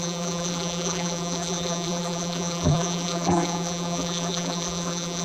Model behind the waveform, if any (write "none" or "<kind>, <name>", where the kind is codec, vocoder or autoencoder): vocoder, BigVGAN v2